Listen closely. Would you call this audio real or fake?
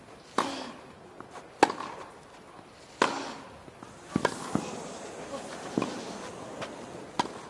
real